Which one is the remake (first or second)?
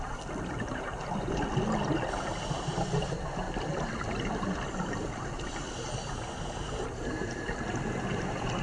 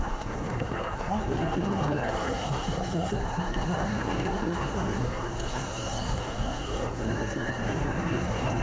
second